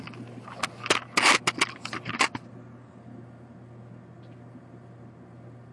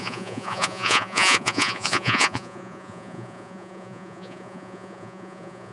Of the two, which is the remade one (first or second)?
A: second